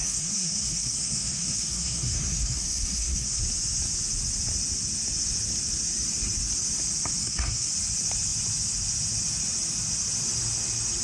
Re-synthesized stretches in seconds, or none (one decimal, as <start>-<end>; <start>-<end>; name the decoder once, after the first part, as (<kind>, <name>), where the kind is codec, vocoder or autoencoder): 0.0-3.4 (codec, SNAC); 7.2-7.7